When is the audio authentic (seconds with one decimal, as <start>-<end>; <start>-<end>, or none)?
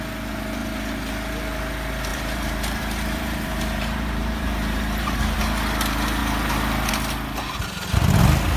0.0-2.1; 5.4-8.6